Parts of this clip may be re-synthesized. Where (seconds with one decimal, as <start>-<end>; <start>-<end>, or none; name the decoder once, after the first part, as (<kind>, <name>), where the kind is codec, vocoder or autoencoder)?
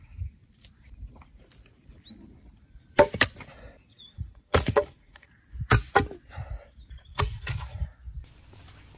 3.9-5.4 (vocoder, Vocos); 7.1-7.8